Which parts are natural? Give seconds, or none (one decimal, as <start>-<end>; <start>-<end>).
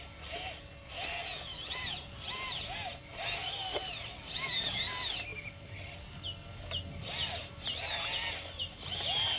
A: 0.0-9.4